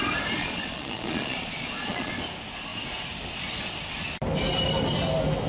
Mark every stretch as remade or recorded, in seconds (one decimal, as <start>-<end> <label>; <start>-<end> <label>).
0.0-0.4 recorded; 0.4-2.1 remade; 2.1-5.5 recorded